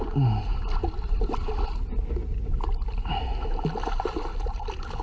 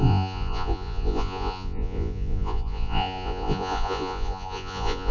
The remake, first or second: second